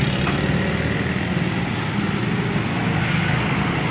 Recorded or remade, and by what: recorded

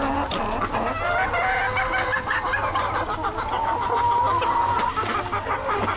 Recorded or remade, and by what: recorded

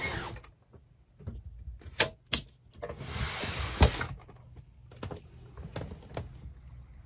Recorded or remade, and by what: recorded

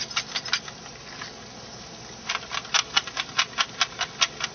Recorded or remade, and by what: recorded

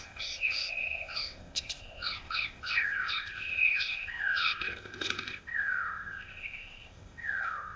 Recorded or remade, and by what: remade, codec, ZipCodec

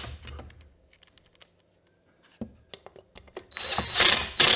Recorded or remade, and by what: recorded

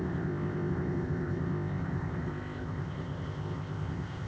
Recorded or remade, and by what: remade, codec, ZipCodec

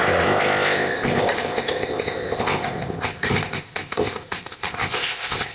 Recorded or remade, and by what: remade, codec, ZipCodec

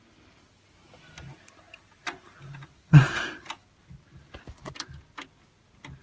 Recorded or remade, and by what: recorded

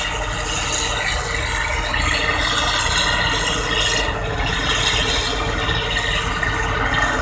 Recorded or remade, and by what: recorded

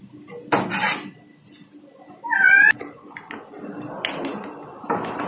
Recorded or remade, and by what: recorded